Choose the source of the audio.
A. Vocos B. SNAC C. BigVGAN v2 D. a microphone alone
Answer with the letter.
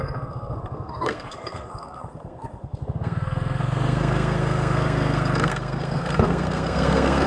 B